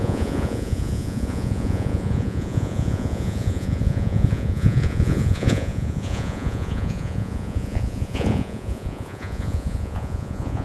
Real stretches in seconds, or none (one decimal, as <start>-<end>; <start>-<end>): none